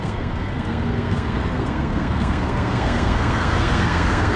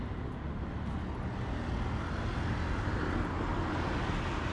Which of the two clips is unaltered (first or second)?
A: second